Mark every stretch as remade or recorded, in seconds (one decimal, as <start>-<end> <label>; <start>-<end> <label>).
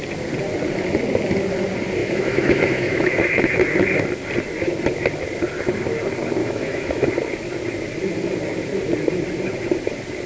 0.0-2.0 recorded; 2.0-3.5 remade; 3.5-6.4 recorded; 6.4-7.1 remade; 7.1-10.3 recorded